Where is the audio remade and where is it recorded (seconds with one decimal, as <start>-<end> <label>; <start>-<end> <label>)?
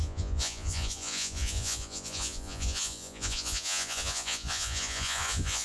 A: 0.0-5.6 remade